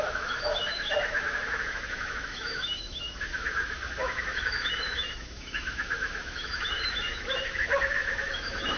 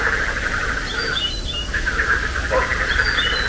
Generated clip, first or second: first